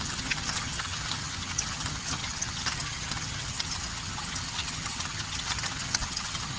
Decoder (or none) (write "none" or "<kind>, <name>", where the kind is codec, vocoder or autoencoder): vocoder, HiFi-GAN